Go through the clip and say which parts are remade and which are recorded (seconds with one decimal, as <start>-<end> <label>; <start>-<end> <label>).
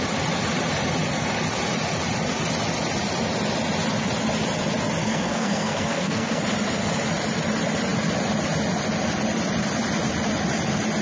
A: 0.0-5.0 recorded; 5.0-6.4 remade; 6.4-11.0 recorded